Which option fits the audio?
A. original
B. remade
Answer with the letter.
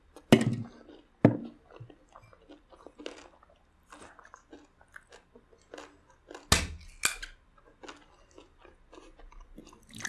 A